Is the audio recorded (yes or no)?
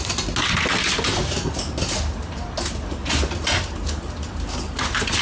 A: yes